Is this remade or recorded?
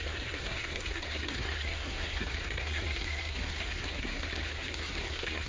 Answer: remade